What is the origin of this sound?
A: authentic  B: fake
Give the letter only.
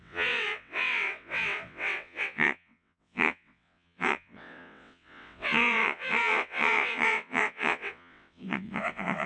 B